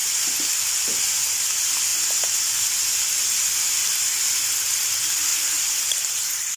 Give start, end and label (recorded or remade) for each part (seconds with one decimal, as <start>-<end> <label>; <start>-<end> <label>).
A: 0.0-5.3 recorded; 5.3-6.6 remade